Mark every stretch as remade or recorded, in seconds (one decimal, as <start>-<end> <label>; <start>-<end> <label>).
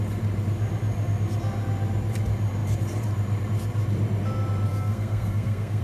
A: 0.0-4.7 recorded; 4.7-5.8 remade